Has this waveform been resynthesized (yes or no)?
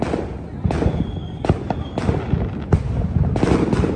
no